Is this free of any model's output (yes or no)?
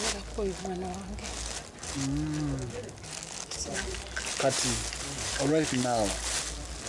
yes